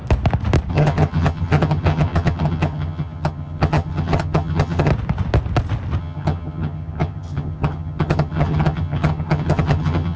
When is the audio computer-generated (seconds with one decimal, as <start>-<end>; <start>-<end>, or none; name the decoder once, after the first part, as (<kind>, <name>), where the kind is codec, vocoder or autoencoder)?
0.7-4.9 (vocoder, HiFi-GAN); 6.0-10.2